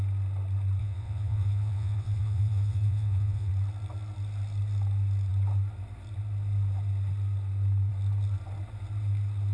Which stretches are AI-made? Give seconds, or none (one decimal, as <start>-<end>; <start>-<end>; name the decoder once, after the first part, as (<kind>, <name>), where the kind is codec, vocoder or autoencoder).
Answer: 0.8-3.5 (vocoder, WaveNeXt)